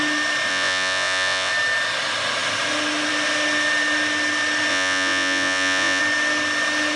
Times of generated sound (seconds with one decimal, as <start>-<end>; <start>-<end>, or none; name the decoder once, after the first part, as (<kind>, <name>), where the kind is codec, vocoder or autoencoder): 0.5-1.5 (vocoder, Vocos); 4.7-6.0